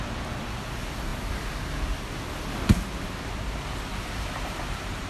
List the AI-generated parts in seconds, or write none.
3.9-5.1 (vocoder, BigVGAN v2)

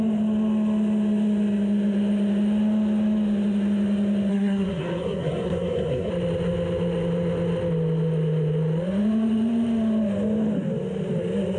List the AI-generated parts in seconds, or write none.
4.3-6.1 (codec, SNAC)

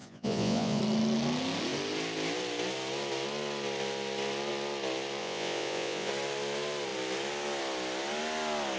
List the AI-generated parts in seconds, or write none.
0.0-0.8 (vocoder, Vocos); 5.2-6.1